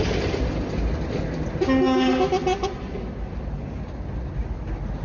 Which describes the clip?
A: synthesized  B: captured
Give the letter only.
B